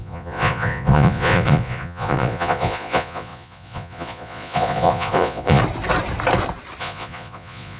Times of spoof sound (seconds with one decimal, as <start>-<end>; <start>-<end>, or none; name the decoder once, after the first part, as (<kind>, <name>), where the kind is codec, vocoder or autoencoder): 0.0-5.6 (vocoder, Vocos); 6.8-7.8